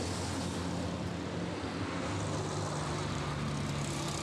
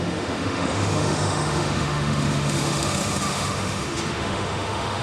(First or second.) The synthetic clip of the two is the second